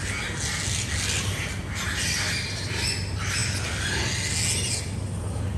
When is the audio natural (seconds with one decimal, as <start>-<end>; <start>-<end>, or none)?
0.0-5.6